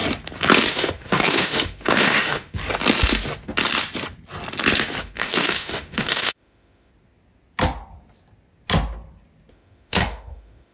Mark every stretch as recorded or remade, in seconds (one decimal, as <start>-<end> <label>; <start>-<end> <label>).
0.0-0.7 recorded; 0.7-2.6 remade; 2.6-5.0 recorded; 5.0-6.9 remade; 6.9-9.5 recorded; 9.5-10.7 remade